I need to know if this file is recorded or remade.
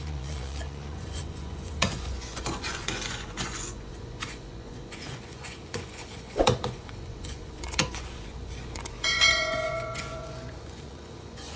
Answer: remade